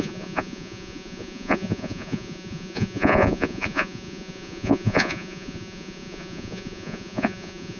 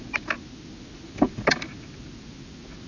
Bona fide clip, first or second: second